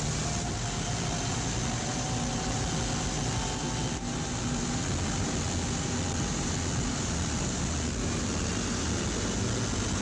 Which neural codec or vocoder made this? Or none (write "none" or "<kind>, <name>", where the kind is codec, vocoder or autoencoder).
none